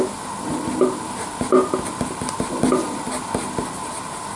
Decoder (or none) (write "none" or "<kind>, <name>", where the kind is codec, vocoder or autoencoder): none